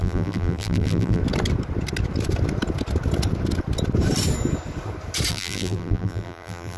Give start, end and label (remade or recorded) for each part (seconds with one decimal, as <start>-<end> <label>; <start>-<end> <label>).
0.0-1.2 remade; 1.2-5.3 recorded; 5.3-6.8 remade